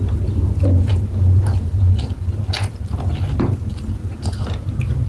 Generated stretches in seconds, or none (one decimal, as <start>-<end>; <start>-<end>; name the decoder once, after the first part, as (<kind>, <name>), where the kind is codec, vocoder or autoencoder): none